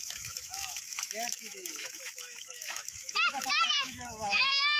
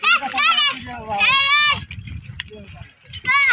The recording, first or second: second